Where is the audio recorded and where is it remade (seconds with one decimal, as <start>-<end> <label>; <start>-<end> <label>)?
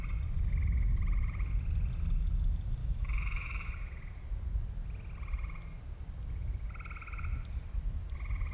0.0-2.8 recorded; 2.8-3.7 remade; 3.7-8.5 recorded